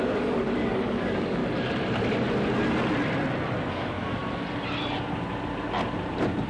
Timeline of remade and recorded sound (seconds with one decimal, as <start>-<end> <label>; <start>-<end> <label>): 0.0-1.4 remade; 1.4-3.7 recorded; 3.7-4.2 remade; 4.2-6.5 recorded